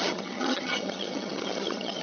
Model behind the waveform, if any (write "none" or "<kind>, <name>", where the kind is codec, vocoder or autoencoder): vocoder, HiFi-GAN